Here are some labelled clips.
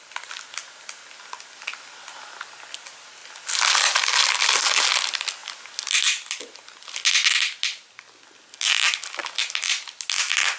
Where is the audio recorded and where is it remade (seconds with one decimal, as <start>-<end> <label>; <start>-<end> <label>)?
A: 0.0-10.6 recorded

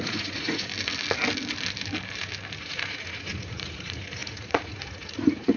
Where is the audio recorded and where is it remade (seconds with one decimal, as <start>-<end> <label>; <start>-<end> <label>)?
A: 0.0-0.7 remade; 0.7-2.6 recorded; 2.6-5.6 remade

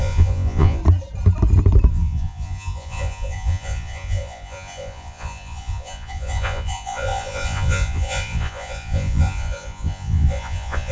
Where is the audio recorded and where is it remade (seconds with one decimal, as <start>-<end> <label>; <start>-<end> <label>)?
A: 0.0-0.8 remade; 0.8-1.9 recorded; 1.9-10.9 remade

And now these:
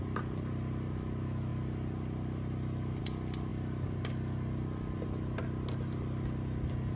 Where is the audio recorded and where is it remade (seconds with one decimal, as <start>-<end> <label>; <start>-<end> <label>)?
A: 0.0-7.0 recorded

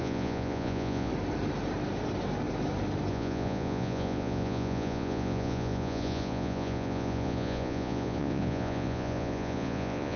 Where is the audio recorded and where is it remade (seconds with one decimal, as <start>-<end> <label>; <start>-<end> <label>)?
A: 0.0-1.1 remade; 1.1-3.1 recorded; 3.1-10.2 remade

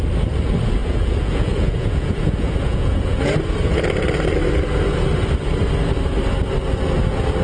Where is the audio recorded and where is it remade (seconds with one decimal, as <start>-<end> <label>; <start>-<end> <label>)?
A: 0.0-0.8 recorded; 0.8-3.2 remade; 3.2-7.4 recorded

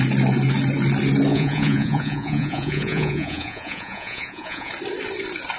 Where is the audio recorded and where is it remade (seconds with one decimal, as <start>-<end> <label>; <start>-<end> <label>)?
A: 0.0-1.3 recorded; 1.3-4.7 remade; 4.7-5.6 recorded

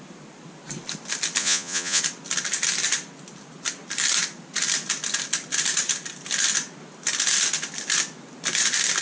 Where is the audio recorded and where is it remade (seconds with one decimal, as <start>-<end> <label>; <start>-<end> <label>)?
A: 0.0-1.4 recorded; 1.4-2.0 remade; 2.0-9.0 recorded